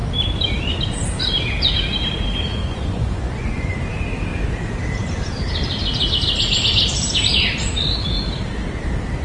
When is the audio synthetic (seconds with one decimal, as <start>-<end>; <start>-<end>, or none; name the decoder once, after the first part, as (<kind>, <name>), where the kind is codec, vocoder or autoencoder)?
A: 2.6-3.8 (vocoder, Vocos)